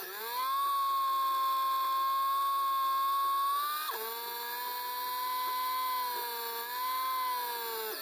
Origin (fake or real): real